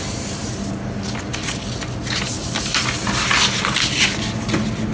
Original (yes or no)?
yes